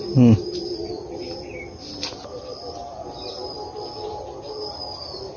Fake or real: real